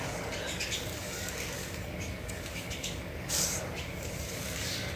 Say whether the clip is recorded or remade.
remade